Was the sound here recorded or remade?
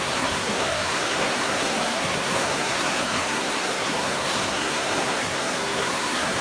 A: remade